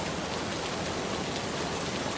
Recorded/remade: recorded